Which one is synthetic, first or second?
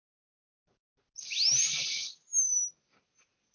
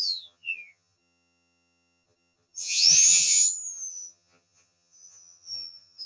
second